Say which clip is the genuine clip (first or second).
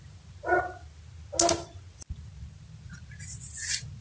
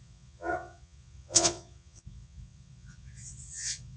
first